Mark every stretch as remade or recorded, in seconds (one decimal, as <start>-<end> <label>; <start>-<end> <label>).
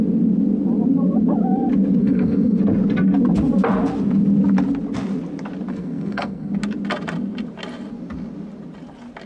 0.0-2.0 recorded; 2.0-2.6 remade; 2.6-5.7 recorded; 5.7-6.5 remade; 6.5-9.3 recorded